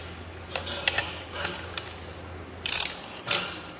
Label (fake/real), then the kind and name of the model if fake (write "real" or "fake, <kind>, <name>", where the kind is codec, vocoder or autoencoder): real